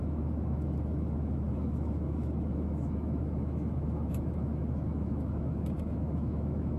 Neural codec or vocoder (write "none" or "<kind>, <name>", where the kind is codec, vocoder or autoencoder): autoencoder, DAC-VAE